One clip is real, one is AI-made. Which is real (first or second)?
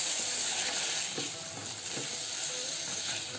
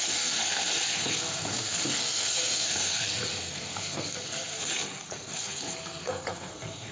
first